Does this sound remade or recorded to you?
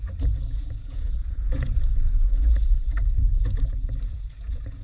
remade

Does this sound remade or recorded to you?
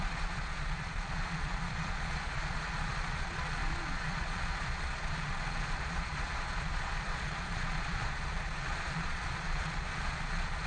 remade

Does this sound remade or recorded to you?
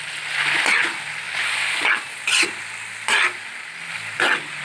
recorded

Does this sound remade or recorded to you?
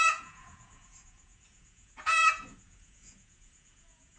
remade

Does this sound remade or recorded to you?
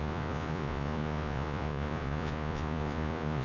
remade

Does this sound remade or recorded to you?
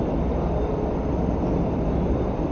recorded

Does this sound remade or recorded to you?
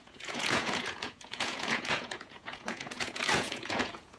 remade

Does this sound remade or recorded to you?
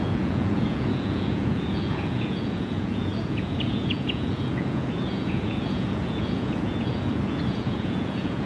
remade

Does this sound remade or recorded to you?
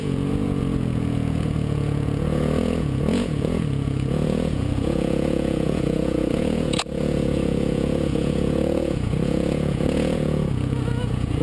remade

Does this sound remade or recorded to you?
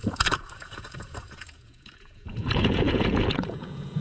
remade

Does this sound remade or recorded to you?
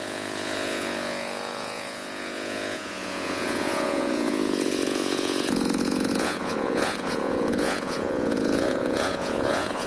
remade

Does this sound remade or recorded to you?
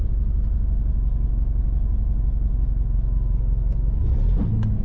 recorded